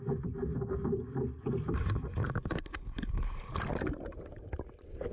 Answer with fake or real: real